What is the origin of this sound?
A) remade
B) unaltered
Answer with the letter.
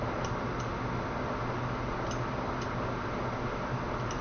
B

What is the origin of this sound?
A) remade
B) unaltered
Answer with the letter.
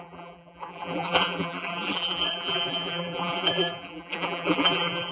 A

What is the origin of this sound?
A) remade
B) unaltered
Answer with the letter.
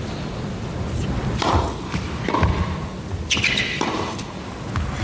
B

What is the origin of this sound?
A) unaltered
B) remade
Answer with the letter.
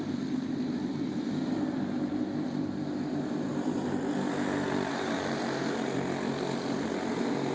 B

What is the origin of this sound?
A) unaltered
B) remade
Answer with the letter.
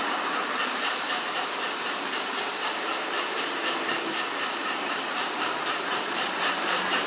B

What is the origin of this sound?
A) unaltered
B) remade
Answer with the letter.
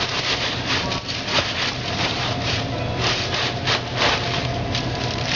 B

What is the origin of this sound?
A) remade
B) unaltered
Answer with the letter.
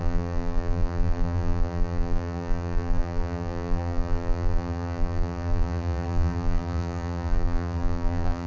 A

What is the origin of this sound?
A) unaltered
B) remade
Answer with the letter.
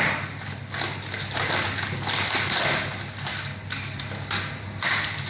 A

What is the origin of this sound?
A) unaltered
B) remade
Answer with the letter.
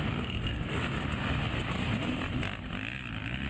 A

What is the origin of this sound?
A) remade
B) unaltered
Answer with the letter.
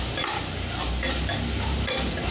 B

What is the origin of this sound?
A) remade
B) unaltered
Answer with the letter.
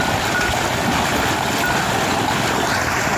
B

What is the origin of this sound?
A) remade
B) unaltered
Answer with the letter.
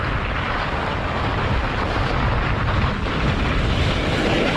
B